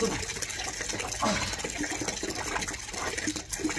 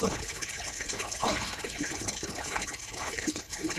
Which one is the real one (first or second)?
first